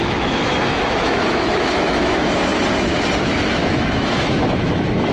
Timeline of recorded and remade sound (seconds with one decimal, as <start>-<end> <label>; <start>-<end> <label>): 0.0-2.5 remade; 2.5-3.2 recorded; 3.2-5.1 remade